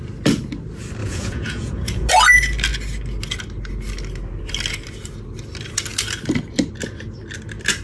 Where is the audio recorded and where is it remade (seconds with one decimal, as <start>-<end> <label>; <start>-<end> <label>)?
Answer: 0.0-1.0 recorded; 1.0-2.1 remade; 2.1-7.8 recorded